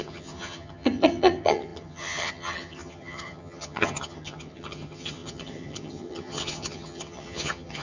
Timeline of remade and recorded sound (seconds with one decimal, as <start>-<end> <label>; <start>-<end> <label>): 0.0-7.8 remade